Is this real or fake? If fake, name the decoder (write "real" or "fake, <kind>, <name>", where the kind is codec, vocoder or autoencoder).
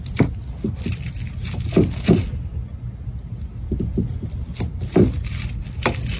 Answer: real